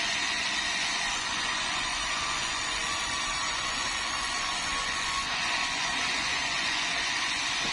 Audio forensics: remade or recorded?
remade